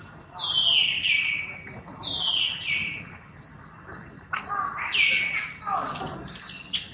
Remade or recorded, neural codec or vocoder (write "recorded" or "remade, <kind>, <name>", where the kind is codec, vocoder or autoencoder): recorded